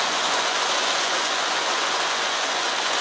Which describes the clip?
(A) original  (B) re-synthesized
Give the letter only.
B